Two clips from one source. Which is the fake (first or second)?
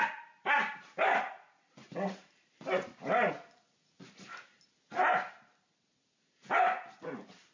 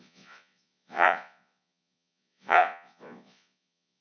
second